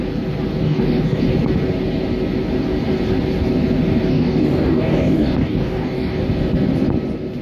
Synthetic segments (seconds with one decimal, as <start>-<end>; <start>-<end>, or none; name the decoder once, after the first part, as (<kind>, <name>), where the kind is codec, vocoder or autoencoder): 0.6-1.2 (codec, DAC); 4.1-6.2